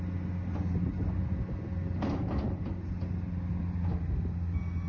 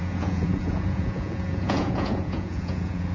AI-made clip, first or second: second